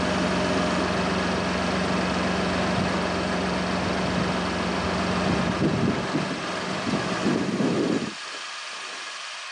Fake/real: real